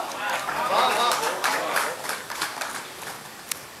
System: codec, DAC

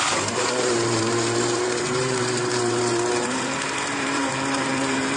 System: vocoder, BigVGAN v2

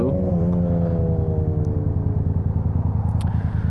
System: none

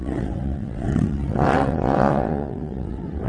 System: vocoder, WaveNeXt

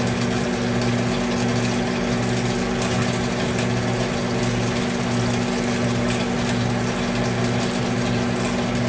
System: none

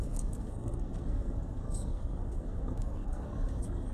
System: codec, SNAC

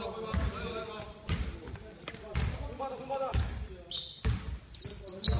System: none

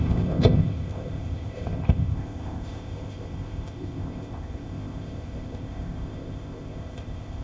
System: codec, ZipCodec